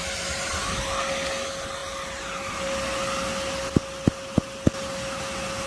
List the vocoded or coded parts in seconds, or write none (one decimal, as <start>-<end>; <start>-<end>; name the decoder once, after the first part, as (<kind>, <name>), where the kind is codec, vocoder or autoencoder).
none